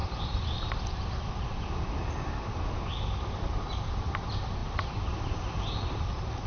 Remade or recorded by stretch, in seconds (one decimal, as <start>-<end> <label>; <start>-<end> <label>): 0.0-6.5 remade